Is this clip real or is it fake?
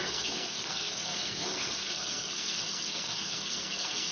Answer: fake